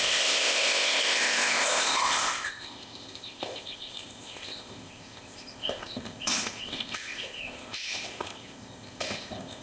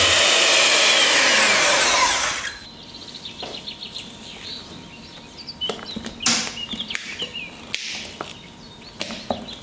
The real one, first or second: second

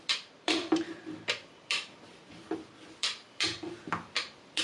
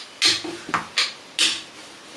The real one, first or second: second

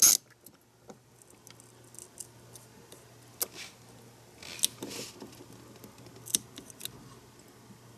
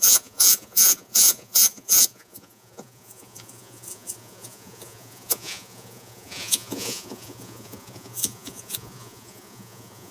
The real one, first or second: first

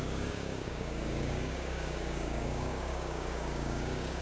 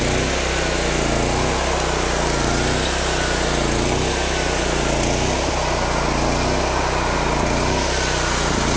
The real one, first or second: second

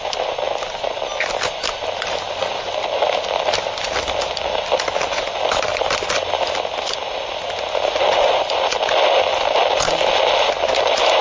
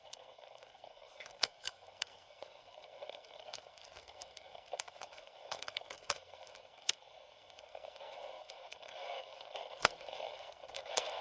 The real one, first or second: first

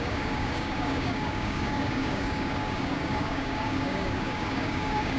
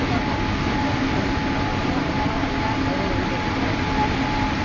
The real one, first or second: second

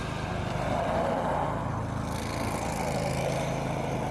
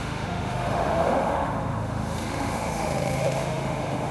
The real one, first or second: first